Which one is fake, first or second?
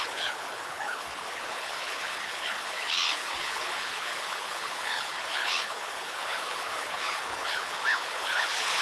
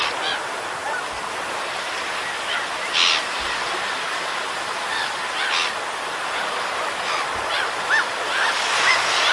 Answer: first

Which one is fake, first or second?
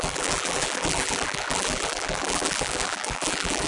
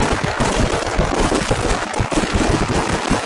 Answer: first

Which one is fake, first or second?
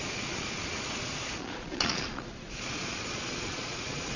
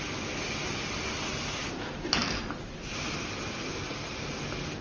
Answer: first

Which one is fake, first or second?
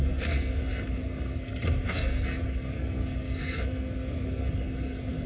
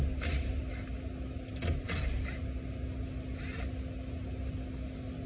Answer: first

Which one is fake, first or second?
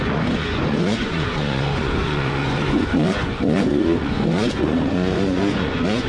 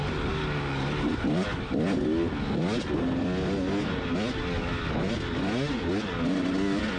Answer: first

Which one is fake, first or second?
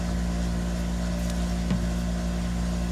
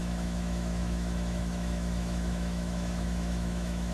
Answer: second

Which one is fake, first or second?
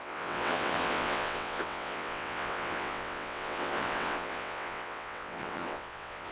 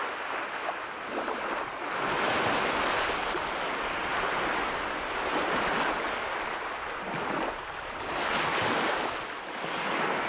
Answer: first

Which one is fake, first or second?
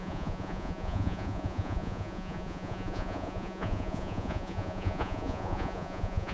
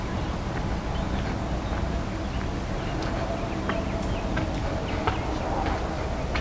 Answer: first